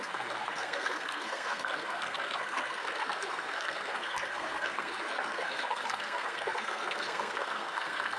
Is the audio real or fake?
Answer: fake